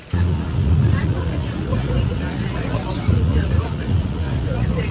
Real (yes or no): no